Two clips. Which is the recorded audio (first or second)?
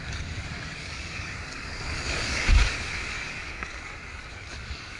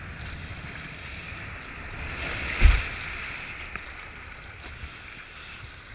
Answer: second